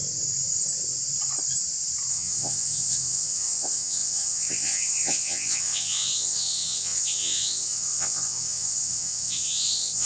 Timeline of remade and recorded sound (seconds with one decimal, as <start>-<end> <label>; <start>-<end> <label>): 0.0-2.1 recorded; 2.1-10.1 remade